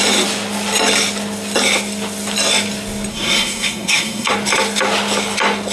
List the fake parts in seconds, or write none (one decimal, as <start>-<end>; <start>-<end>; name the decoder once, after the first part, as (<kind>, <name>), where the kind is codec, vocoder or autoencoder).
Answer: 3.1-4.3 (codec, SNAC)